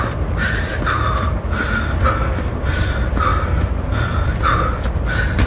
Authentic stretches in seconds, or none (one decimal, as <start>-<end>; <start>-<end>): 0.0-5.5